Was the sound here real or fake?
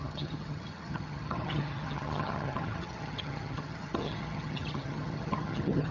fake